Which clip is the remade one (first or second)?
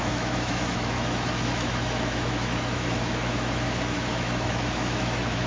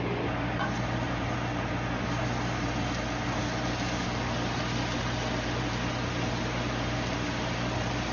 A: first